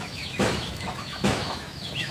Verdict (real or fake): fake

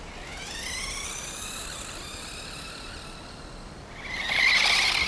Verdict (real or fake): real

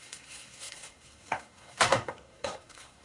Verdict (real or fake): fake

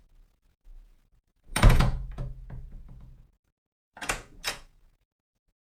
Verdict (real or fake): fake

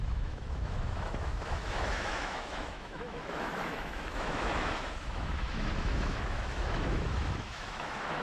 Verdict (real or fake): fake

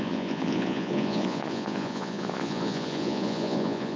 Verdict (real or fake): fake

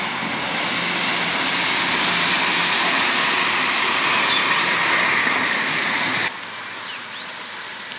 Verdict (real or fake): real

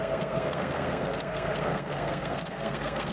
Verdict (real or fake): fake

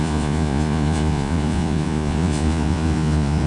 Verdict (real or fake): fake